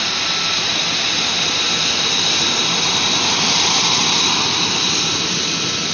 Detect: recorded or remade recorded